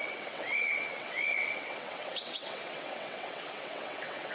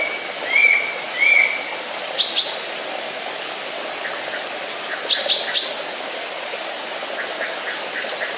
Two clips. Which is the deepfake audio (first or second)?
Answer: first